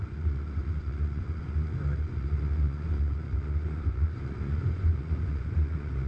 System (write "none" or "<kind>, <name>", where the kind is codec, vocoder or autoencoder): vocoder, Vocos